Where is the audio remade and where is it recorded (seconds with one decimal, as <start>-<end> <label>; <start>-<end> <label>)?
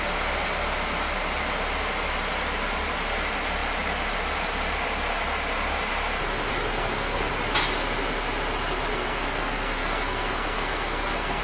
0.0-6.5 recorded; 6.5-7.3 remade; 7.3-8.9 recorded; 8.9-11.4 remade